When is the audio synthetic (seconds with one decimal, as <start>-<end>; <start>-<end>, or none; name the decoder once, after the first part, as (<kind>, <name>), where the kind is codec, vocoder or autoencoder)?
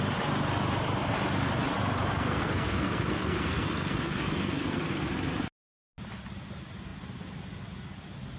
2.1-5.0 (codec, SNAC)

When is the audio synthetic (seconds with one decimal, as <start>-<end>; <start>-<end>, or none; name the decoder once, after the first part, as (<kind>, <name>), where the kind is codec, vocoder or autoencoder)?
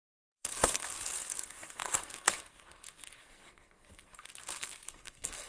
0.0-5.5 (codec, SNAC)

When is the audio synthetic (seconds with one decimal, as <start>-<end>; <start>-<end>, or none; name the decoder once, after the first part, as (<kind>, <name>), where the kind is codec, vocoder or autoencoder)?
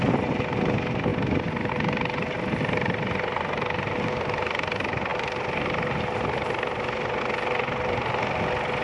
none